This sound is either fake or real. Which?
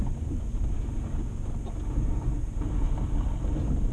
real